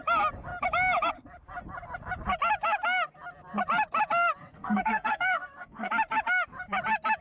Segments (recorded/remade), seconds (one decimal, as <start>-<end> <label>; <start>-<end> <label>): 0.0-4.4 recorded; 4.4-5.9 remade; 5.9-7.2 recorded